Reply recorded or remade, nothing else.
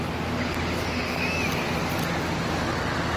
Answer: recorded